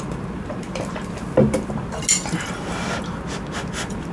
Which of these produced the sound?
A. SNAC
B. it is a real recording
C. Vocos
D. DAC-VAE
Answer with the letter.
B